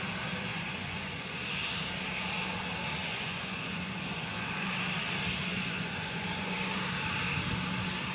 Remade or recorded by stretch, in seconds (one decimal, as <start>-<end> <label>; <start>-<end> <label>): 0.0-0.5 recorded; 0.5-1.4 remade; 1.4-3.0 recorded; 3.0-4.7 remade; 4.7-5.5 recorded; 5.5-6.8 remade; 6.8-8.1 recorded